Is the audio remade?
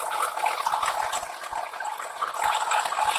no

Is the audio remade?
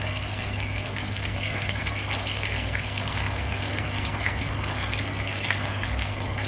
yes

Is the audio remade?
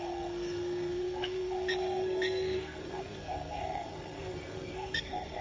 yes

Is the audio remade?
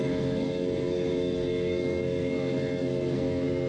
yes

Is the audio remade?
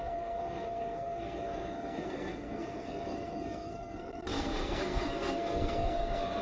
yes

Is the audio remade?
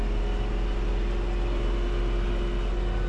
no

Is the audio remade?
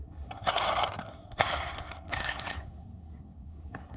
yes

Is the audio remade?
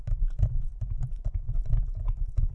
no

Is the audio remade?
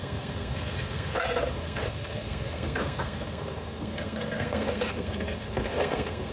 yes